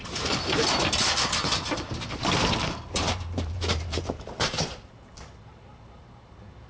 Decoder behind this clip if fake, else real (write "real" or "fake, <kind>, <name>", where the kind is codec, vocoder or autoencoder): fake, vocoder, BigVGAN v2